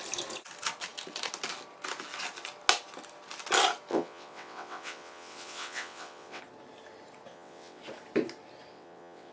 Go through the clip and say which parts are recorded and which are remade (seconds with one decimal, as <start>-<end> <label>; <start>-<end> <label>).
0.0-3.9 recorded; 3.9-6.4 remade; 6.4-7.3 recorded; 7.3-7.8 remade; 7.8-8.7 recorded; 8.7-9.3 remade